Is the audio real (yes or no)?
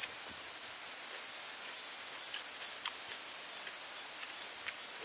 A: yes